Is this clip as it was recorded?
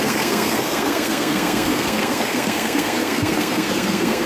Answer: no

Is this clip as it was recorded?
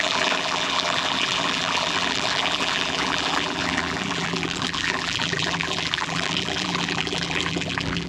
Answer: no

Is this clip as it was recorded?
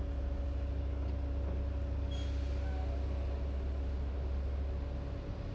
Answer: yes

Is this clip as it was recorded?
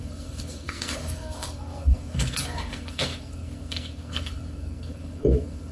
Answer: no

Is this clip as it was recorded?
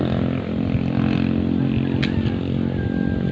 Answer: yes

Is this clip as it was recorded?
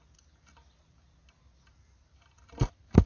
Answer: yes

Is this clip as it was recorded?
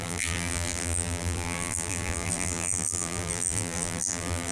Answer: no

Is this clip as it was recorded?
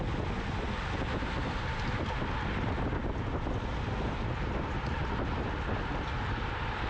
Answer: yes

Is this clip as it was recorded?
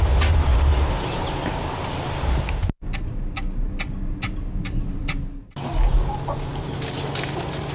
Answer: yes